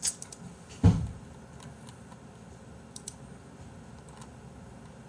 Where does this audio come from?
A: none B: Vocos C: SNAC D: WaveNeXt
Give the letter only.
A